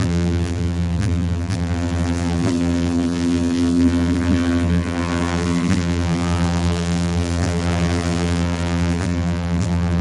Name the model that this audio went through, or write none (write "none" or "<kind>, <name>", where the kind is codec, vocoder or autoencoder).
vocoder, BigVGAN v2